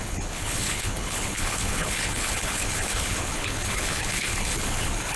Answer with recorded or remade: remade